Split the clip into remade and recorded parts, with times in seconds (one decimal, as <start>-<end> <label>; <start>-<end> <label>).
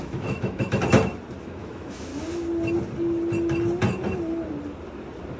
0.0-0.8 remade; 0.8-1.4 recorded; 1.4-2.1 remade; 2.1-5.4 recorded